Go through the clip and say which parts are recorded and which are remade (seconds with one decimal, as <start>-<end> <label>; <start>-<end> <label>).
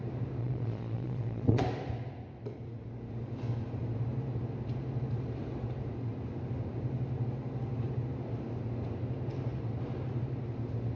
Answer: 0.0-0.4 recorded; 0.4-1.6 remade; 1.6-11.0 recorded